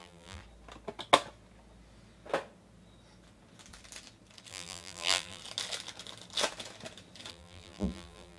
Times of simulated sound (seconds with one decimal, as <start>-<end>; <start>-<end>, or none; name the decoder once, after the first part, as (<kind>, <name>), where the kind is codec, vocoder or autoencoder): 0.0-0.4 (vocoder, BigVGAN v2); 4.5-5.4; 7.3-8.4